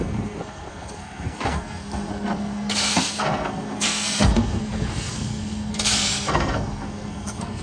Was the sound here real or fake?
fake